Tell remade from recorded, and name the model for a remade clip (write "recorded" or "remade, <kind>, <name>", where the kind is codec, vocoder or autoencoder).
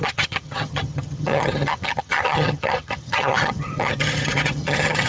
remade, vocoder, HiFi-GAN